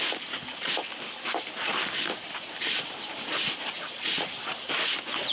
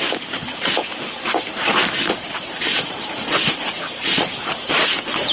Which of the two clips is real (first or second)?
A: first